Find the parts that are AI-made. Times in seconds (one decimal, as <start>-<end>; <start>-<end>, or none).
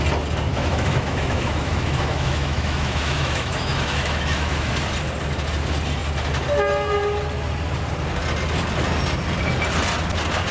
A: 0.5-4.7